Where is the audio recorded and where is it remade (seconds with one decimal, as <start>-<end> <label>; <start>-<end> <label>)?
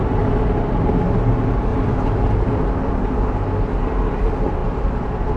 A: 0.0-1.7 recorded; 1.7-3.0 remade; 3.0-4.6 recorded; 4.6-5.4 remade